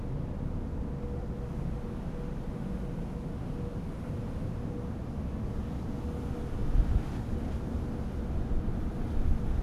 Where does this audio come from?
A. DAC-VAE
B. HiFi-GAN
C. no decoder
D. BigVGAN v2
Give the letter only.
C